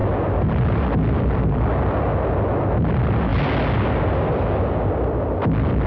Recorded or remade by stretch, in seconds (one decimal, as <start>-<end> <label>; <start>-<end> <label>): 0.0-5.9 recorded